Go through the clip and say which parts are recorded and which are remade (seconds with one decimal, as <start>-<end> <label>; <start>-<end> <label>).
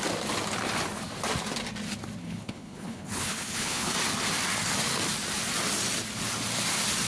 0.0-2.2 recorded; 2.2-3.9 remade; 3.9-7.1 recorded